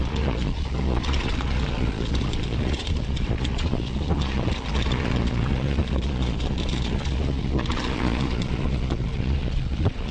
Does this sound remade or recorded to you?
remade